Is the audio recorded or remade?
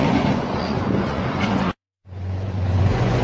remade